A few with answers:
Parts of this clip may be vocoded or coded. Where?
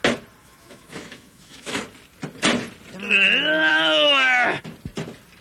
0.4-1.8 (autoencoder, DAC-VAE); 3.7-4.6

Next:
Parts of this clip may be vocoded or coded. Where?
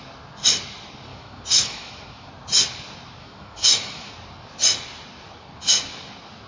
1.1-2.3 (autoencoder, DAC-VAE); 3.2-4.1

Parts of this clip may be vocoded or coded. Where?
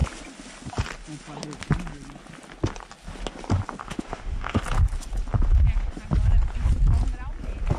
3.8-4.6 (autoencoder, DAC-VAE)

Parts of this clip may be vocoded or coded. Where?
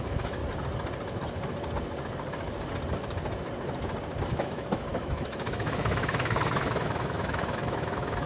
0.0-0.4 (autoencoder, DAC-VAE); 4.3-8.3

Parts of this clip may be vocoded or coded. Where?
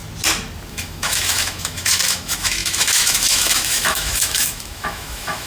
0.7-5.5 (autoencoder, DAC-VAE)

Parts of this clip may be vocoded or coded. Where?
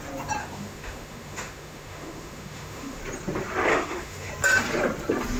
0.4-3.0 (autoencoder, DAC-VAE); 3.7-4.3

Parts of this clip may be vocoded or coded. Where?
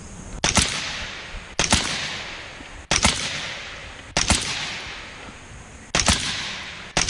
none